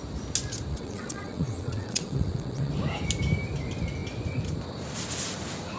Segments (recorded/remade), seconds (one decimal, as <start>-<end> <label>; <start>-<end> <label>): 0.0-0.7 recorded; 0.7-2.7 remade; 2.7-5.8 recorded